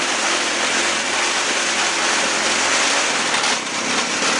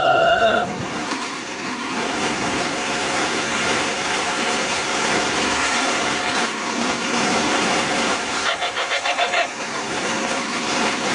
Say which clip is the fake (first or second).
second